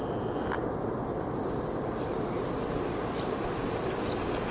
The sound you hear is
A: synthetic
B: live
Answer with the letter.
B